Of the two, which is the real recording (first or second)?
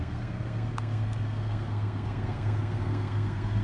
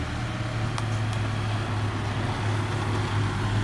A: second